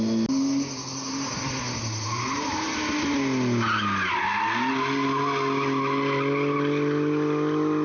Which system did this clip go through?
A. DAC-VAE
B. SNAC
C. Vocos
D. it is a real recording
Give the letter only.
D